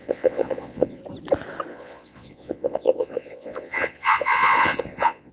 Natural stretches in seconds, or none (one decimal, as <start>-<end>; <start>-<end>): 1.0-1.7